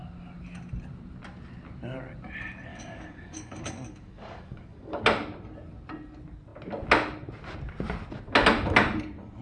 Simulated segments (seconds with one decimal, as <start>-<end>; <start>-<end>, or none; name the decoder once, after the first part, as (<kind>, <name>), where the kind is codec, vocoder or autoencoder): 2.7-5.0 (codec, DAC)